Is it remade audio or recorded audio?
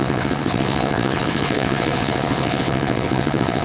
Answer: remade